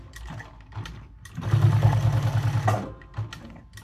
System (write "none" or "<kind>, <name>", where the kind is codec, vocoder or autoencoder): none